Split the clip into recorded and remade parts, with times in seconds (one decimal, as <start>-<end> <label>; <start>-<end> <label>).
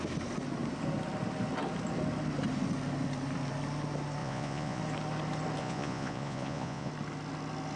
0.0-4.2 recorded; 4.2-4.8 remade; 4.8-5.6 recorded; 5.6-6.9 remade; 6.9-7.8 recorded